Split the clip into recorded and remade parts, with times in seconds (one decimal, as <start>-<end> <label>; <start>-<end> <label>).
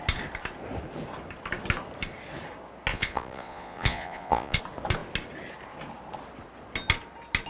0.0-2.9 recorded; 2.9-4.6 remade; 4.6-7.5 recorded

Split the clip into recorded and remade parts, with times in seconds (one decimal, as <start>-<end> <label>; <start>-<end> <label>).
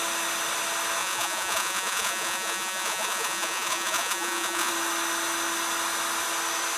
0.0-1.0 recorded; 1.0-4.7 remade; 4.7-6.8 recorded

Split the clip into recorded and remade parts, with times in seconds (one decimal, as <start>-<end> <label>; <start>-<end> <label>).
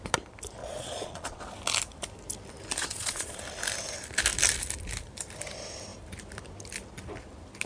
0.0-0.6 recorded; 0.6-1.4 remade; 1.4-2.8 recorded; 2.8-3.4 remade; 3.4-7.7 recorded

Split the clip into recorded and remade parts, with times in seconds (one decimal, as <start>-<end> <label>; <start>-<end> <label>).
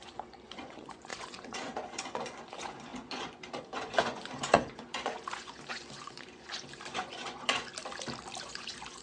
0.0-7.7 remade; 7.7-8.4 recorded; 8.4-9.0 remade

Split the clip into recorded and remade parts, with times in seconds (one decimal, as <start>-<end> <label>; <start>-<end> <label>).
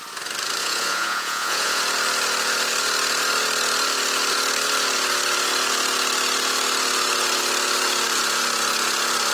0.0-0.6 recorded; 0.6-1.8 remade; 1.8-9.3 recorded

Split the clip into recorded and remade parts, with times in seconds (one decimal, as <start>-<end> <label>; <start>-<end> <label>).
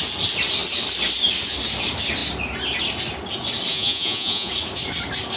0.0-3.7 recorded; 3.7-4.5 remade; 4.5-5.4 recorded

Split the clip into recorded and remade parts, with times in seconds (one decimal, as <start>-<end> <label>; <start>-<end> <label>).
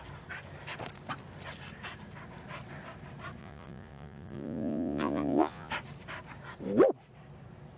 0.0-3.4 recorded; 3.4-5.7 remade; 5.7-7.8 recorded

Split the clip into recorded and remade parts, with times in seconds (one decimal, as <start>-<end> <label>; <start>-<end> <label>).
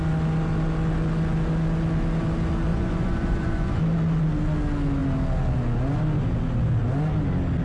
0.0-2.7 recorded; 2.7-3.8 remade; 3.8-7.6 recorded